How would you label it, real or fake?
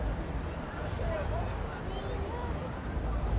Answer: fake